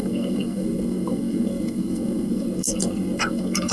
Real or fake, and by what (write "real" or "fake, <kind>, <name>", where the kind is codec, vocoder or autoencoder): fake, codec, SNAC